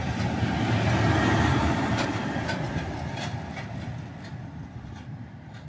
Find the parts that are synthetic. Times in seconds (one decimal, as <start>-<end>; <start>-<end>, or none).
none